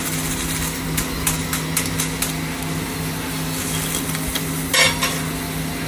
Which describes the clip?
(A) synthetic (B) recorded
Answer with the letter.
B